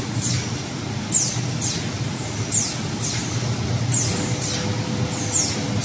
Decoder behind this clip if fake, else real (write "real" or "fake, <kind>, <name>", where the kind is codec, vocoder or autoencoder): real